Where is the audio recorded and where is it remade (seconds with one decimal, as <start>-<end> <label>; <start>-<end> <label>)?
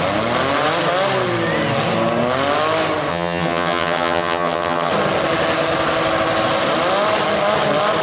0.0-3.1 recorded; 3.1-4.9 remade; 4.9-8.0 recorded